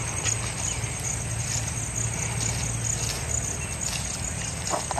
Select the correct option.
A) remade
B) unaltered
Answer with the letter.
B